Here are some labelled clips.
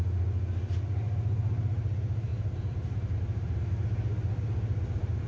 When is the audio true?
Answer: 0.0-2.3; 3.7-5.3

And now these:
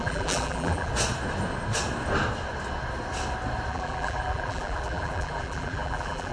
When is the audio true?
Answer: 0.9-3.7

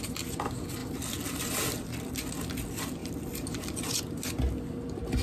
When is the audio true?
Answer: 0.0-0.8; 2.1-3.0; 4.0-5.2